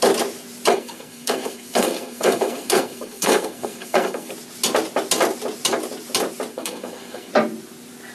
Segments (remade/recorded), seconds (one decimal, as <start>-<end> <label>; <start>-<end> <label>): 0.0-0.7 recorded; 0.7-4.3 remade; 4.3-6.5 recorded; 6.5-7.3 remade; 7.3-8.1 recorded